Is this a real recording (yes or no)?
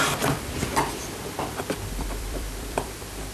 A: no